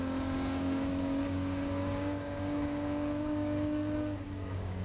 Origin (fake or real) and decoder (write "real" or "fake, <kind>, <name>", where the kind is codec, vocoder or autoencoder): fake, codec, DAC